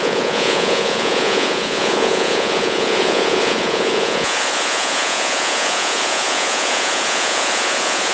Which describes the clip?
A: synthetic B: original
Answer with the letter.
A